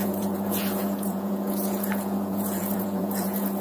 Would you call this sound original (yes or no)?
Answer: no